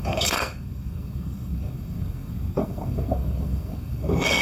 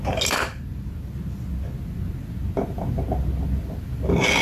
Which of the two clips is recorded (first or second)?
second